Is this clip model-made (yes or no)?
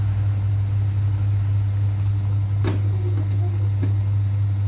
no